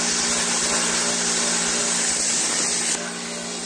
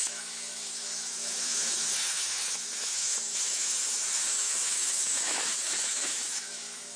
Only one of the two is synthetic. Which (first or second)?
second